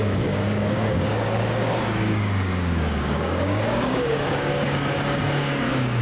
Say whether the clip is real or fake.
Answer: fake